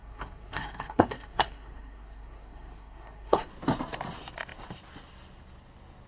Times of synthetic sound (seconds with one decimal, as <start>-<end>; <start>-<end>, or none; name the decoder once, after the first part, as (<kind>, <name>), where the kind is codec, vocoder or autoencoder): 0.0-3.5 (codec, SNAC)